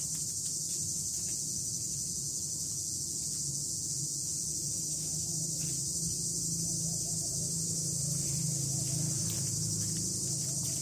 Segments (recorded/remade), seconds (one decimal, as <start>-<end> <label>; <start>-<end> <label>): 0.0-0.5 recorded; 0.5-4.8 remade; 4.8-10.8 recorded